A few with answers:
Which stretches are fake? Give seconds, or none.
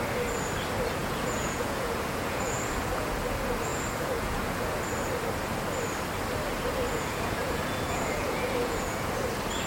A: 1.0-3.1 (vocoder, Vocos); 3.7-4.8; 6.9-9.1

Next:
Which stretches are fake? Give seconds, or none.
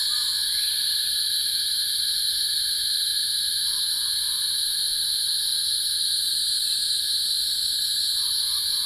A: 0.0-8.9 (vocoder, BigVGAN v2)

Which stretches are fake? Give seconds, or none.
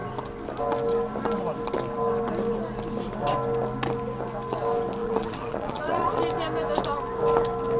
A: 5.0-6.2 (vocoder, Vocos)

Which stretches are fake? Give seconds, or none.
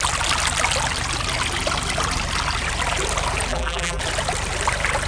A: 3.5-4.0 (vocoder, BigVGAN v2)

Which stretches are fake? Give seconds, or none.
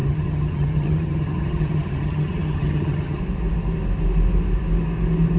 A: 0.0-3.2 (vocoder, HiFi-GAN)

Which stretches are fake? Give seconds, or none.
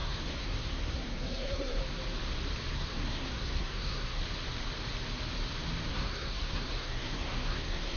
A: 0.0-1.8 (codec, SNAC); 2.7-4.2; 5.9-8.0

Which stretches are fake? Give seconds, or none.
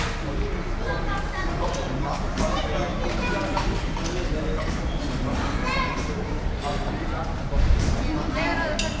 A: 2.9-8.0 (vocoder, BigVGAN v2)